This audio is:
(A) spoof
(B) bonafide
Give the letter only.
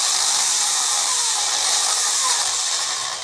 A